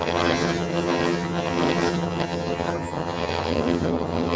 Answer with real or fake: fake